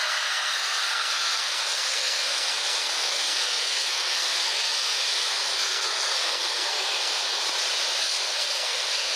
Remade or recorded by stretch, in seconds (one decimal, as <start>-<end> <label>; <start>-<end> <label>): 0.0-7.4 remade; 7.4-8.0 recorded; 8.0-9.2 remade